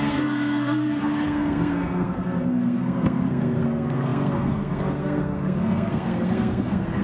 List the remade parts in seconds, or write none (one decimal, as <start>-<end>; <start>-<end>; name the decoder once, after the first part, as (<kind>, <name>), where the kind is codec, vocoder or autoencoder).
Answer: 0.0-7.0 (codec, SNAC)